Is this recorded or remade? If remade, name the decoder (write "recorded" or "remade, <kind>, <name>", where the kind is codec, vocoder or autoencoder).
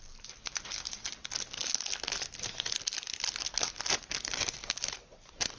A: recorded